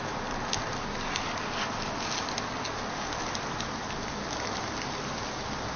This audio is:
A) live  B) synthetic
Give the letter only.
A